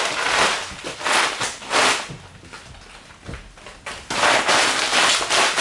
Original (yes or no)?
yes